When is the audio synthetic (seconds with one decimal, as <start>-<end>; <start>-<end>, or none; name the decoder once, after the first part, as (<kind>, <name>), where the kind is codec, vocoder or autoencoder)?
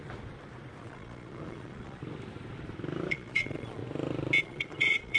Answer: 0.8-2.0 (vocoder, Vocos); 3.1-3.8; 4.4-5.2